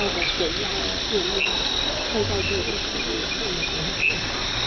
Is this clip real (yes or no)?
yes